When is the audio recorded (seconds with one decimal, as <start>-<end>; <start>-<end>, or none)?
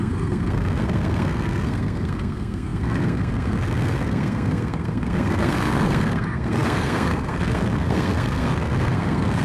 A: none